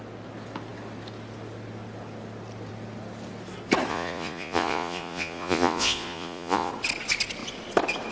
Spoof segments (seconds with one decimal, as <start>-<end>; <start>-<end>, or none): 3.9-6.7